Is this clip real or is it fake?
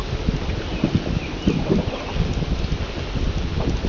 real